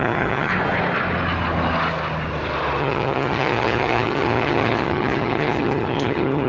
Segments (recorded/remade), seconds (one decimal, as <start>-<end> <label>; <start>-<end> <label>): 0.0-0.5 remade; 0.5-2.8 recorded; 2.8-6.5 remade